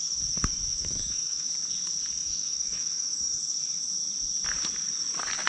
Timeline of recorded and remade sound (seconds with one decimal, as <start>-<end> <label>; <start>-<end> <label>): 0.0-0.7 recorded; 0.7-1.5 remade; 1.5-2.2 recorded; 2.2-3.4 remade; 3.4-5.5 recorded